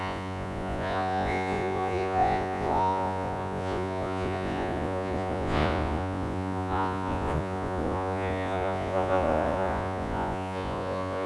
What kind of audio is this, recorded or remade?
remade